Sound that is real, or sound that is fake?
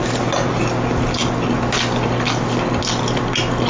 real